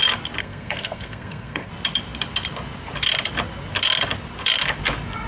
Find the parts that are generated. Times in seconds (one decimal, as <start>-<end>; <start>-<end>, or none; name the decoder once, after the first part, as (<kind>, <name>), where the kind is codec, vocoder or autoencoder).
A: 0.4-1.7 (codec, SNAC)